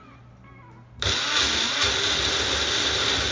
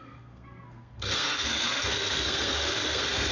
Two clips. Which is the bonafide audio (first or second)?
first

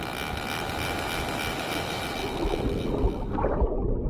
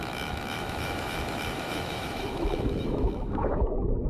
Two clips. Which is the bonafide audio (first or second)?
first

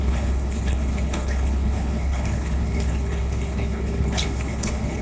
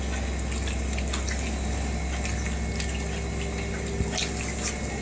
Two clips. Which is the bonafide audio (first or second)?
second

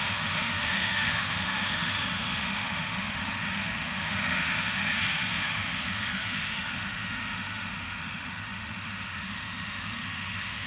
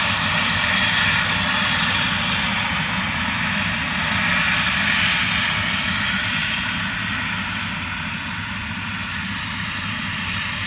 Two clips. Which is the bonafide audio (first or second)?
second